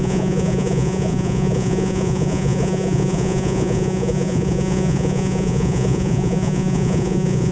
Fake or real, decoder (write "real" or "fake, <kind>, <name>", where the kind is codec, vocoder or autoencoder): fake, vocoder, Vocos